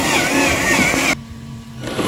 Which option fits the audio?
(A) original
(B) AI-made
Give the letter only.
A